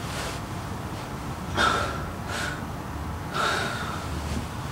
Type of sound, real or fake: real